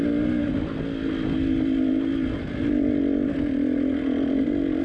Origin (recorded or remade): recorded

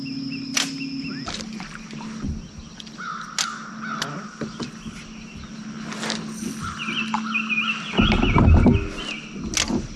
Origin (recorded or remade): recorded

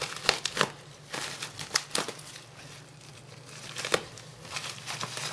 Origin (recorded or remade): remade